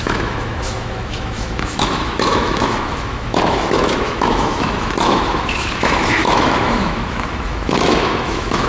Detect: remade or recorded remade